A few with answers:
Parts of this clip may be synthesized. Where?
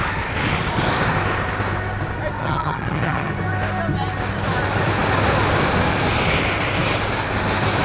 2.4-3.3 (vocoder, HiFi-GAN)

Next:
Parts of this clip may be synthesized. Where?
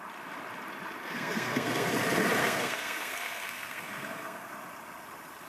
1.0-1.9 (codec, SNAC); 2.4-4.5